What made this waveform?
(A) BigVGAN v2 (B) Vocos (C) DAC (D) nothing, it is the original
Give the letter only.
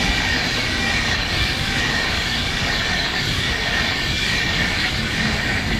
C